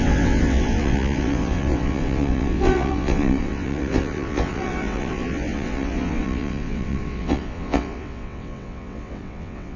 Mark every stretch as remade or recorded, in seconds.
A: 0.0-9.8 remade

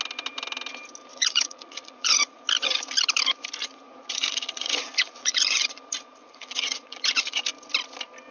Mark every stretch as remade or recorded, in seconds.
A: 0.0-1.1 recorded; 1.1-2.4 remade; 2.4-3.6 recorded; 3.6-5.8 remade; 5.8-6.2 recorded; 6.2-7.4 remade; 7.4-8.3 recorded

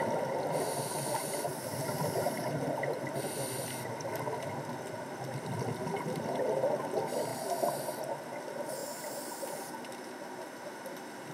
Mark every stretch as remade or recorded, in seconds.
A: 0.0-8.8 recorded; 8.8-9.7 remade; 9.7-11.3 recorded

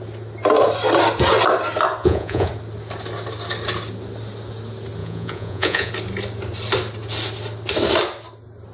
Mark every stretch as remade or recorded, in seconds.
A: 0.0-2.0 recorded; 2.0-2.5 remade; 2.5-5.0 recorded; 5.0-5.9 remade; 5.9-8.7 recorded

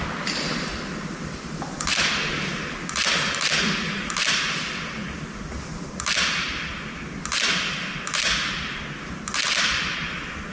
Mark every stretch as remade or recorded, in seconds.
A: 0.0-10.5 recorded

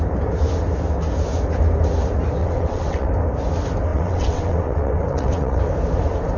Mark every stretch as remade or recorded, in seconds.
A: 0.0-2.4 recorded; 2.4-3.1 remade; 3.1-3.9 recorded; 3.9-5.6 remade; 5.6-6.4 recorded